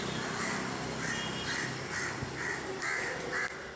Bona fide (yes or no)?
yes